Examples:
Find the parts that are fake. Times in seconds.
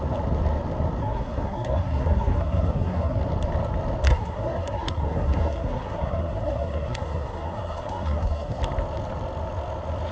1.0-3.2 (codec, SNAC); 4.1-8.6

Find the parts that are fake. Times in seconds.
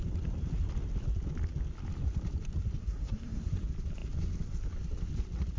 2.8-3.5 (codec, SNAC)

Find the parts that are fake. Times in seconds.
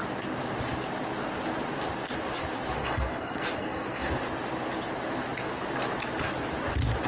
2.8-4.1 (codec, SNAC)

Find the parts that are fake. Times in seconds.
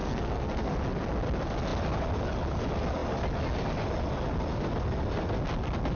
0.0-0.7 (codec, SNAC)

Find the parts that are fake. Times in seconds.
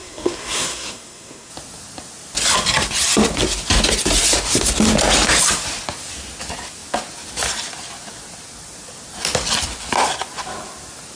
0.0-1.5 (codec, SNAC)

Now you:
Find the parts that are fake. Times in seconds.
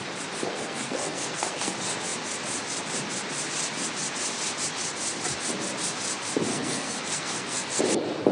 0.5-1.7 (codec, SNAC); 6.5-7.8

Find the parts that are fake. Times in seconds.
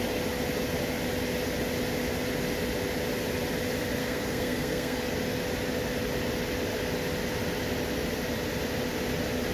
4.0-5.0 (codec, SNAC)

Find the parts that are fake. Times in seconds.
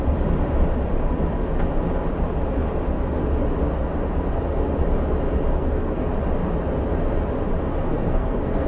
5.5-6.0 (codec, SNAC); 7.9-8.7